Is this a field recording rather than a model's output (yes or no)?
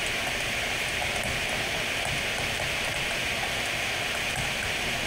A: yes